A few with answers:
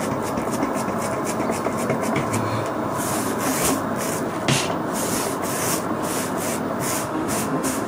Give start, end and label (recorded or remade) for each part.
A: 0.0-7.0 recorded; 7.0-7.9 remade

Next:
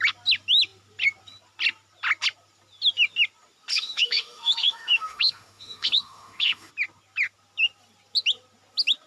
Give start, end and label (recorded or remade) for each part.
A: 0.0-3.7 recorded; 3.7-6.7 remade; 6.7-9.1 recorded

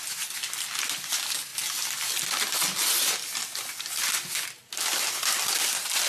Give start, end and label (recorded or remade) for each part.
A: 0.0-6.1 recorded